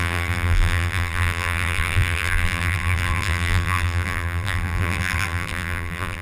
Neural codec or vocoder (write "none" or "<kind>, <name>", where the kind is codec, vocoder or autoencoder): vocoder, BigVGAN v2